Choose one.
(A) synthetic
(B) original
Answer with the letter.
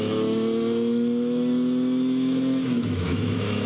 A